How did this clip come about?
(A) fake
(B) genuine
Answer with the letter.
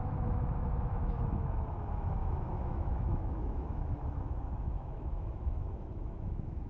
A